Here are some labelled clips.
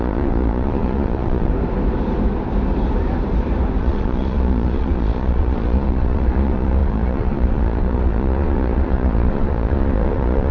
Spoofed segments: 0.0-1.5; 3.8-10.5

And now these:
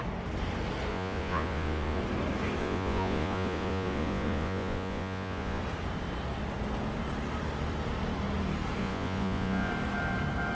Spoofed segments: 0.9-2.0; 2.6-5.6; 8.8-9.7